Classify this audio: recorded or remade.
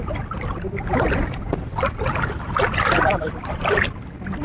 recorded